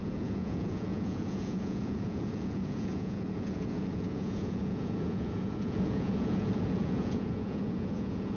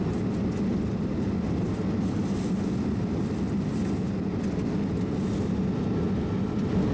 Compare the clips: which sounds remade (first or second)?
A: first